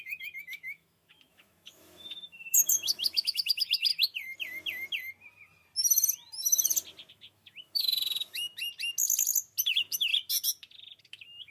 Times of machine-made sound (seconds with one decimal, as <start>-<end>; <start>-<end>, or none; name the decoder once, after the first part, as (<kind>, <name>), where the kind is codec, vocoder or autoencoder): 0.0-3.9 (autoencoder, DAC-VAE); 7.1-8.6; 9.7-10.1; 11.0-11.5